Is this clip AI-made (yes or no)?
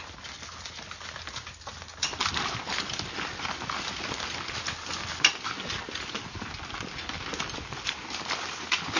no